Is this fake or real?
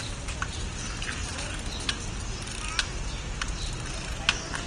real